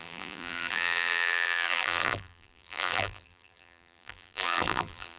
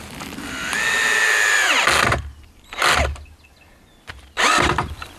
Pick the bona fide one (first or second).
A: second